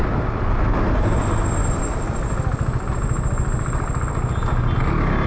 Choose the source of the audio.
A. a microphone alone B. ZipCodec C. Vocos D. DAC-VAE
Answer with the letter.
A